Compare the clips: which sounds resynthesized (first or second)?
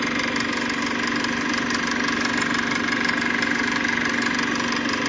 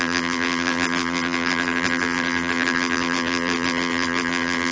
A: second